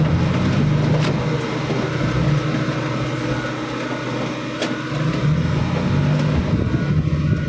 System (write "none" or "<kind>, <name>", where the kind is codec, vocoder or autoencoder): none